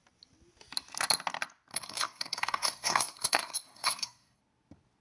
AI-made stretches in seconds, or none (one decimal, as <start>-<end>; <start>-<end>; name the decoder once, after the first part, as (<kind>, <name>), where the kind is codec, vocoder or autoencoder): 1.7-4.4 (codec, SNAC)